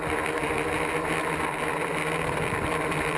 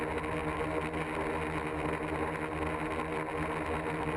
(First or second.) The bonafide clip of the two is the second